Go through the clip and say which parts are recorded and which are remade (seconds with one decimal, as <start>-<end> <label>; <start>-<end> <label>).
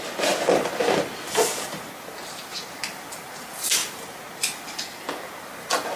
0.0-6.0 recorded